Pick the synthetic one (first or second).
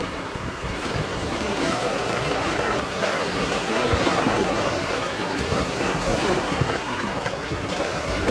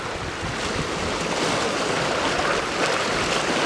first